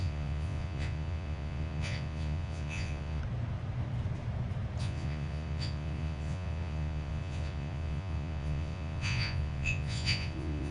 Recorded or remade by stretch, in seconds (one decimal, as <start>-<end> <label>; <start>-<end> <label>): 0.0-3.2 remade; 3.2-4.8 recorded; 4.8-10.7 remade